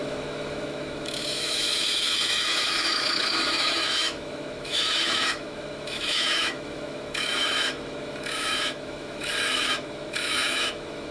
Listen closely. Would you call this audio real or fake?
fake